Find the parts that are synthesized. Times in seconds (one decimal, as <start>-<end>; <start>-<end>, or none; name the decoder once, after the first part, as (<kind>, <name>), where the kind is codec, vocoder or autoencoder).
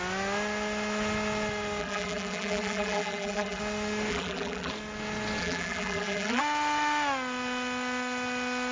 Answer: 1.8-3.6 (vocoder, BigVGAN v2); 4.1-4.7; 5.4-6.4